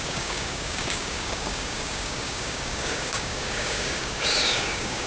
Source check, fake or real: fake